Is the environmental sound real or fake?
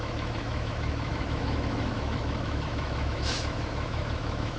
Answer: fake